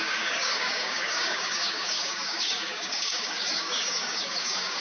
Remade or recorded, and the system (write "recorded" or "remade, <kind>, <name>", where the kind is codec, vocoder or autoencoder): remade, codec, DAC